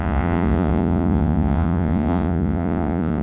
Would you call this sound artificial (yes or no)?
yes